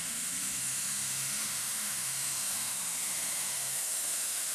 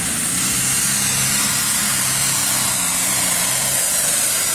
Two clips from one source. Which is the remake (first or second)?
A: first